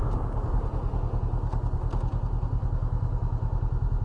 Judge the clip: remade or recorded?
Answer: recorded